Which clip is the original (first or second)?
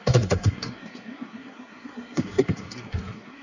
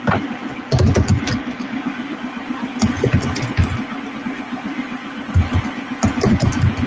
second